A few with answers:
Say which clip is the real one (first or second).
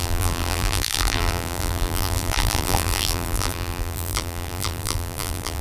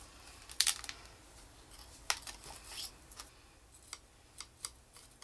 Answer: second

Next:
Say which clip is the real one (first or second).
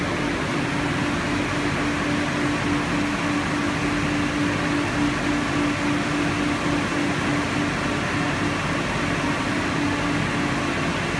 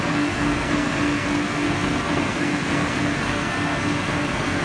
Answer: first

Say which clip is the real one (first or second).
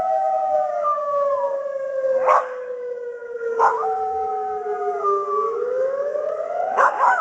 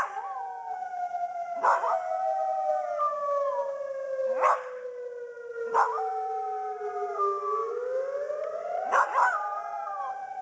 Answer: second